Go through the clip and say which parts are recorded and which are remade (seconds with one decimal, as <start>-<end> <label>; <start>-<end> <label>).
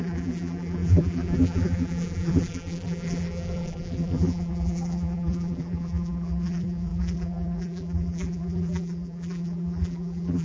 0.0-10.4 remade